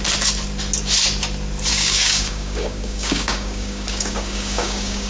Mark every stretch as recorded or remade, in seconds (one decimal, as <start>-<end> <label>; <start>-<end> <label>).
0.0-1.7 recorded; 1.7-5.1 remade